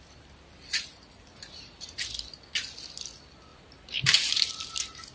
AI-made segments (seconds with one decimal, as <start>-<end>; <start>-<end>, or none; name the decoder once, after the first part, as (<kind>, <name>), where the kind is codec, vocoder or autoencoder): 1.3-2.0 (vocoder, BigVGAN v2); 3.5-4.5